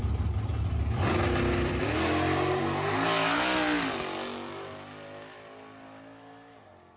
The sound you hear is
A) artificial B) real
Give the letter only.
B